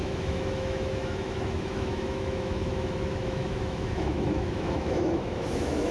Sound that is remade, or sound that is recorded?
remade